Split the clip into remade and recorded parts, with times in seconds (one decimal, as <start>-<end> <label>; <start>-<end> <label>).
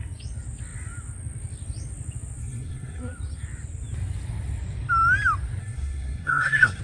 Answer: 0.0-2.4 recorded; 2.4-3.0 remade; 3.0-5.6 recorded; 5.6-6.8 remade